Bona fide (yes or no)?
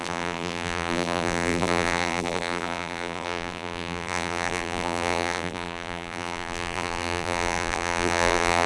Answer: no